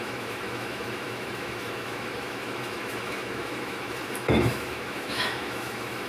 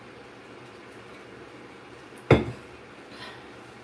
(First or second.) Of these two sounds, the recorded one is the second